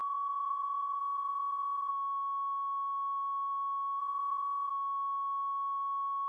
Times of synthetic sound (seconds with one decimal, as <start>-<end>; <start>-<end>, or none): 0.0-1.9; 4.0-4.7